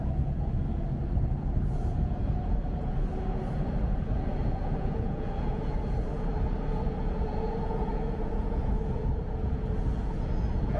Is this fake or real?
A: fake